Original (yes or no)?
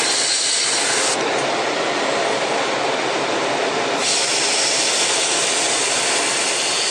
yes